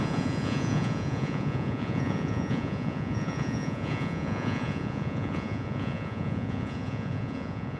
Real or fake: fake